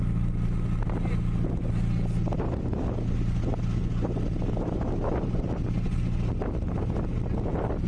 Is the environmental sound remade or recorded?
recorded